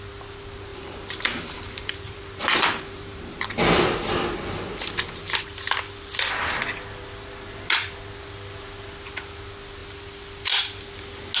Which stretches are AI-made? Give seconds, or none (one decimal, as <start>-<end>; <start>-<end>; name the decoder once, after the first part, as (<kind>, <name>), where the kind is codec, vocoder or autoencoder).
0.7-3.2 (vocoder, BigVGAN v2)